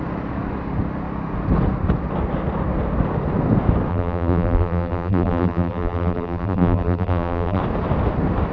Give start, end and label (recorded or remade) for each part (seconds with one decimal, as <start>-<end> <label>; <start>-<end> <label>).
0.0-3.9 recorded; 3.9-7.6 remade; 7.6-8.5 recorded